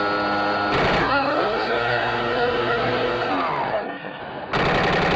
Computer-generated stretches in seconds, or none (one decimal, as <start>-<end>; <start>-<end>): 1.0-3.3; 3.7-4.2

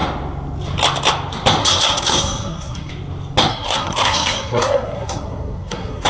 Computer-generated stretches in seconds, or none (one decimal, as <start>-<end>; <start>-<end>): 1.6-2.9; 3.5-6.1

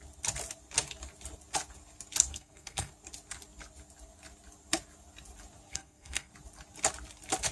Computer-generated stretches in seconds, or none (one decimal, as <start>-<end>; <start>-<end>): 2.3-2.9; 5.7-6.3

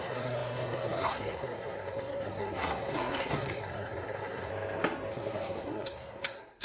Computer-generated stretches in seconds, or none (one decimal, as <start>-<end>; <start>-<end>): 0.0-4.5; 5.1-6.6

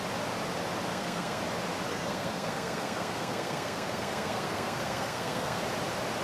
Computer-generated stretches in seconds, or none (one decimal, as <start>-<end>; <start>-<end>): 0.9-1.4; 1.9-5.6

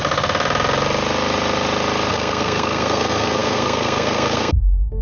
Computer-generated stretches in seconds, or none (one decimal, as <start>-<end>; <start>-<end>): 2.1-5.0

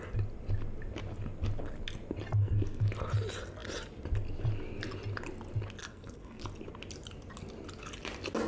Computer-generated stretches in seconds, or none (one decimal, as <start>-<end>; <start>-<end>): 2.4-2.9; 5.8-6.4

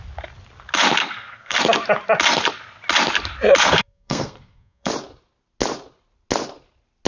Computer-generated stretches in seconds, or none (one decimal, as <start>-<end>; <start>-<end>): 1.0-1.6; 3.6-4.9